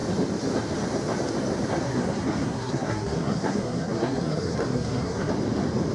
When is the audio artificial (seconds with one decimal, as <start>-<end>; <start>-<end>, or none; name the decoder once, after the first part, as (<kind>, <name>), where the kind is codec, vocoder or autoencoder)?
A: 1.8-5.3 (codec, SNAC)

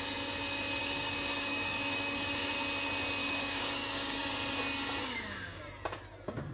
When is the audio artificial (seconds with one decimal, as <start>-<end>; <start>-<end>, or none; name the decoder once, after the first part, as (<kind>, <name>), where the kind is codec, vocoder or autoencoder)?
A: 0.8-2.5 (codec, DAC); 3.2-4.3; 5.0-5.6

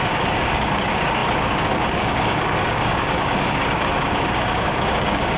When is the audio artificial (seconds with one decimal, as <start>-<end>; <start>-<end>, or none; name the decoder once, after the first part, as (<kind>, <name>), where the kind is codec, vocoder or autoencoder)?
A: 0.0-5.4 (codec, DAC)

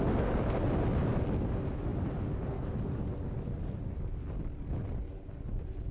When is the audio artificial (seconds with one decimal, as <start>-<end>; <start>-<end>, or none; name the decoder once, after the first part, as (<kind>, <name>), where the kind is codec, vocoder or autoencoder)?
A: none

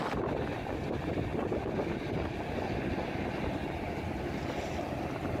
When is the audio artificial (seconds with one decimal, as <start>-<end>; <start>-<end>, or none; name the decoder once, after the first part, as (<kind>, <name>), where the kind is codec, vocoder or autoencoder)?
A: none

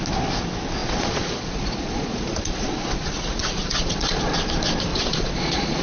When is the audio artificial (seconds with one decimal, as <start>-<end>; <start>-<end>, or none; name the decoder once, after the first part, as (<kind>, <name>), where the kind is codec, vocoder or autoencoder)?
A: 0.8-4.3 (vocoder, Vocos); 4.9-5.8

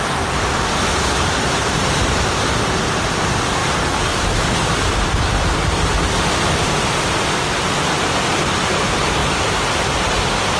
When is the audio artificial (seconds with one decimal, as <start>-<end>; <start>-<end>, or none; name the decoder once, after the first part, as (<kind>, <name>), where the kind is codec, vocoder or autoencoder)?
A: 3.6-7.6 (vocoder, BigVGAN v2)